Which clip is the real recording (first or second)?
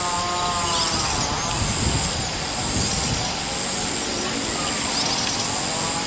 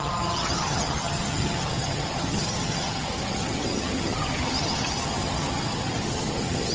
first